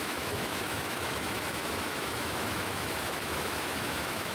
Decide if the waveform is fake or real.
fake